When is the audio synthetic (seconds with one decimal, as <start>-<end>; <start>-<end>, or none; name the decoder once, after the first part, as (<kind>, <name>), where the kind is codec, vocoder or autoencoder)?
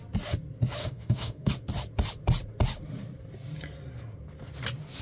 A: 0.8-1.5 (autoencoder, DAC-VAE)